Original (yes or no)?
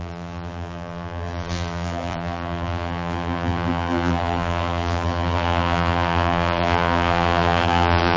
no